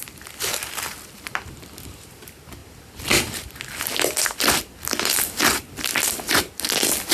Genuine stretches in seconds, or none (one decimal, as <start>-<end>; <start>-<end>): 0.0-7.1